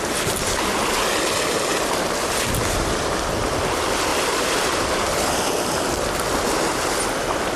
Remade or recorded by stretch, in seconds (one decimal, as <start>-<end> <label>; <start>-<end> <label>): 0.0-4.1 recorded; 4.1-4.9 remade; 4.9-7.6 recorded

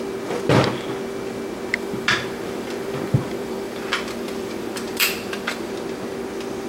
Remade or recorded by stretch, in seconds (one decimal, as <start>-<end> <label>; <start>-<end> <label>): 0.0-1.7 recorded; 1.7-5.7 remade; 5.7-6.7 recorded